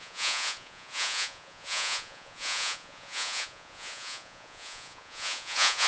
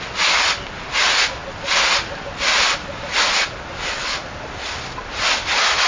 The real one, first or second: second